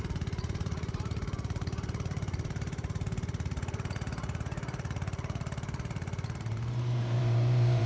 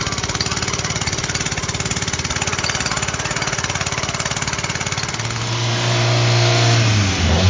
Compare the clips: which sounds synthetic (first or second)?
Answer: first